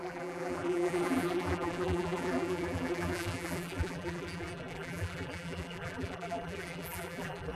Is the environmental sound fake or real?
fake